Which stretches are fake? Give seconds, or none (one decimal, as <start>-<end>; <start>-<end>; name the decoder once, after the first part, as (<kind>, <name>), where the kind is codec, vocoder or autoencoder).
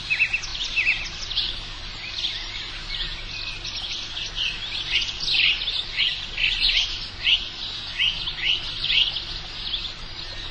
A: none